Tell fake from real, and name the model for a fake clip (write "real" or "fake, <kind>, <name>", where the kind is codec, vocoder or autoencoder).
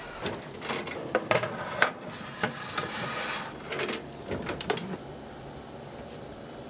fake, vocoder, BigVGAN v2